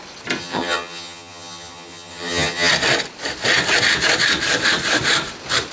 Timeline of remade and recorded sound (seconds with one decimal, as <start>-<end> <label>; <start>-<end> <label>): 0.0-0.4 recorded; 0.4-2.7 remade; 2.7-5.7 recorded